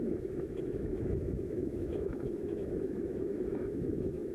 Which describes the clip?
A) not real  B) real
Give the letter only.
A